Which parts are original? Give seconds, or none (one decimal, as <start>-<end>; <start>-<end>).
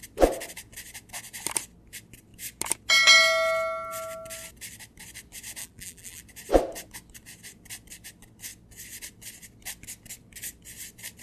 0.0-5.6; 6.2-11.2